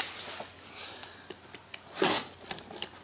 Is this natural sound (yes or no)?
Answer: yes